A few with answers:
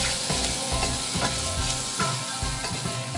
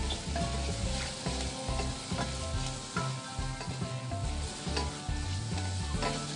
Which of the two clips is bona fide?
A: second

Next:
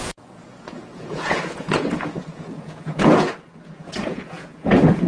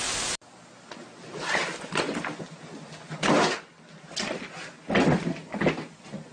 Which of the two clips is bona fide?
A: second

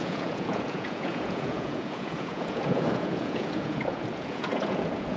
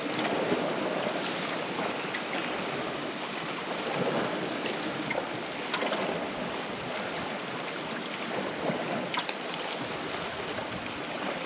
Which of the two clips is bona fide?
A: second